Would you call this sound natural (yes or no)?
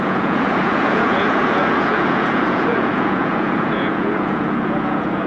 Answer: no